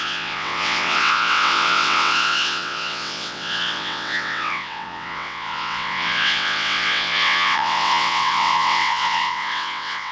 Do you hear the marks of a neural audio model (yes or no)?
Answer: yes